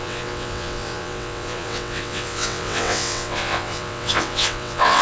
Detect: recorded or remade remade